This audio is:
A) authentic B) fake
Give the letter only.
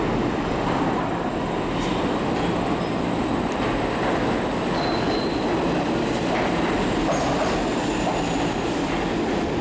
A